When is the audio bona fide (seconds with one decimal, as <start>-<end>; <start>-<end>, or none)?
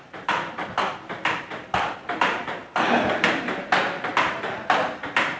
0.6-1.5; 2.6-3.1; 4.1-5.0